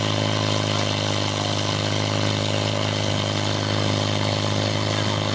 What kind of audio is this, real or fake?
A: real